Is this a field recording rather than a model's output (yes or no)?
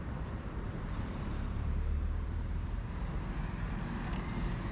no